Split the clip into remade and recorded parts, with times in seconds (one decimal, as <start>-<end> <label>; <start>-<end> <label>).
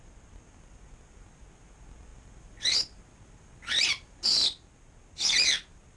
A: 0.0-6.0 recorded